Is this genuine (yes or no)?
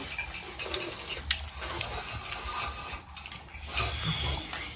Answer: yes